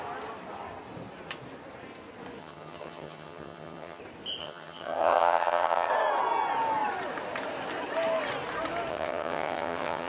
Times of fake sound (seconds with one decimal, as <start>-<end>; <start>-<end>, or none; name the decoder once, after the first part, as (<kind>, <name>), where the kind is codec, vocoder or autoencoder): 2.4-4.0 (vocoder, HiFi-GAN); 4.4-5.9; 8.9-10.1